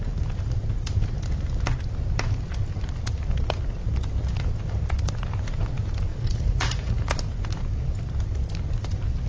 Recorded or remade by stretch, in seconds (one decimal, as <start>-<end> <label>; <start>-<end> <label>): 0.0-6.1 recorded; 6.1-7.1 remade; 7.1-9.3 recorded